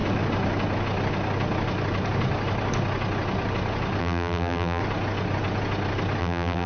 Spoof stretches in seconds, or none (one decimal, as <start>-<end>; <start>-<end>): 4.0-4.8; 6.2-6.7